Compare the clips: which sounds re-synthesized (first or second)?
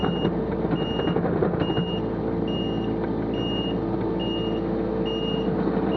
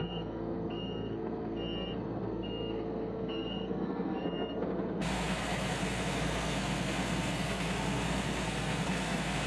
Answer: second